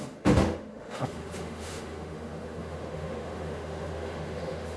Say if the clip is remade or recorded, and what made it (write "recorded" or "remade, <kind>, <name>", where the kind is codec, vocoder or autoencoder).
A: remade, autoencoder, DAC-VAE